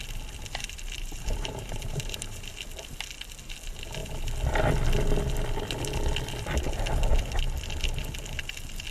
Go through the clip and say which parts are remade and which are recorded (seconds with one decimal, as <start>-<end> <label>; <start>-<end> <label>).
0.0-0.6 recorded; 0.6-2.5 remade; 2.5-8.9 recorded